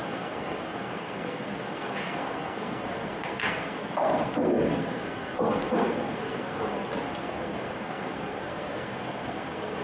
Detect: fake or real fake